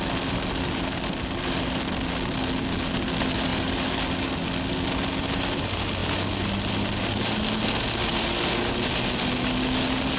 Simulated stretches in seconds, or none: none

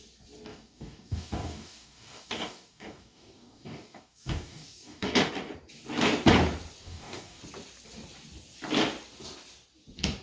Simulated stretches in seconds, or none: 0.5-5.3 (codec, DAC); 6.8-7.4

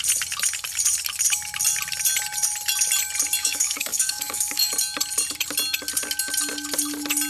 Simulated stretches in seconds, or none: 3.4-4.7 (codec, DAC)